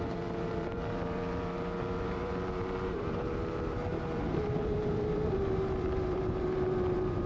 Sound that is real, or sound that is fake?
fake